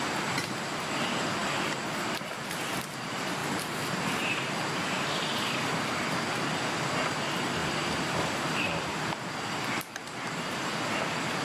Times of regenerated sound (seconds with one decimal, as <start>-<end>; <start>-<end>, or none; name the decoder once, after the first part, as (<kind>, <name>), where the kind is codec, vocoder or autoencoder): 3.4-5.1 (vocoder, BigVGAN v2); 7.6-8.8

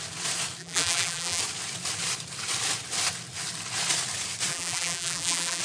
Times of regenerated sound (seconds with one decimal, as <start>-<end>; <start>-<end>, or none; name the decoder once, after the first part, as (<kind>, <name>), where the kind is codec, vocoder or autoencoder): 0.6-1.4 (vocoder, BigVGAN v2); 4.5-5.6

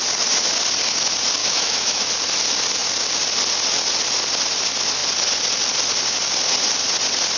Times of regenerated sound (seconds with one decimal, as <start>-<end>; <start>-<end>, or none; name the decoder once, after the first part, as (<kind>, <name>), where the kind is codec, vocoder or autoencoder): 1.4-2.1 (autoencoder, DAC-VAE)

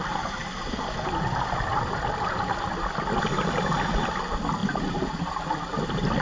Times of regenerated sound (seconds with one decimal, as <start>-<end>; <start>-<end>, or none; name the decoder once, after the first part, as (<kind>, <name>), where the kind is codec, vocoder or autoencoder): none

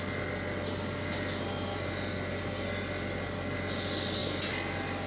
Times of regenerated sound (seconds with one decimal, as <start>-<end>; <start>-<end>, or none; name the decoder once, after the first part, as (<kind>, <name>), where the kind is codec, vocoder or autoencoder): none

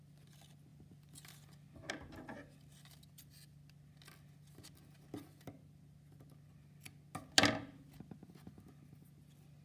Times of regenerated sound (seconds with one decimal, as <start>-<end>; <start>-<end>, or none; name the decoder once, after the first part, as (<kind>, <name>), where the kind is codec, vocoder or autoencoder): none

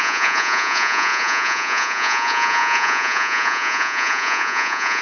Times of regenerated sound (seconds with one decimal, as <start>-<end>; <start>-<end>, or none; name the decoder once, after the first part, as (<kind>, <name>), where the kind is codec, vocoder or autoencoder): 0.0-5.0 (vocoder, Vocos)